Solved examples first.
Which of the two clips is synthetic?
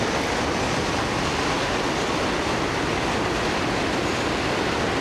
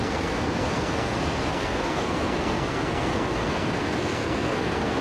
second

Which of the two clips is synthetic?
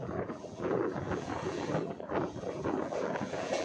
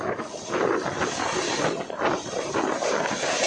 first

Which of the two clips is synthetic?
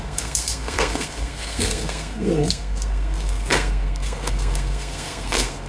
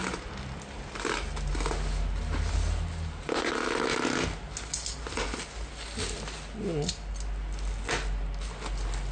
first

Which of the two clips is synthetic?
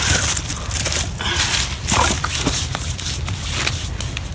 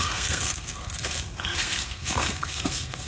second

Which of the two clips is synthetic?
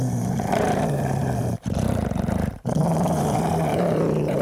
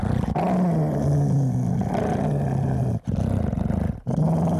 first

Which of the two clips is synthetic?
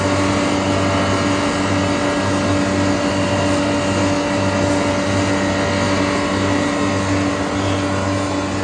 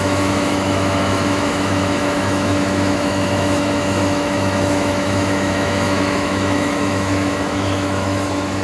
second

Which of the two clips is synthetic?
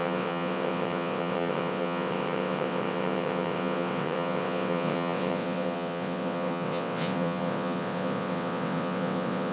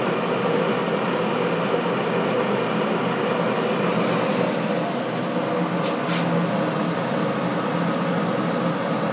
first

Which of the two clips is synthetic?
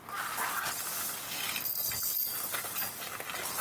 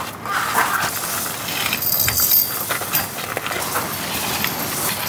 second